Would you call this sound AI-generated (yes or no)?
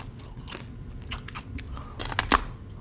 no